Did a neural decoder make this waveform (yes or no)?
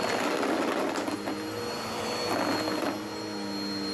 no